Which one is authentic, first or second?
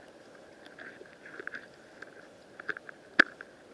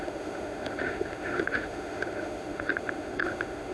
first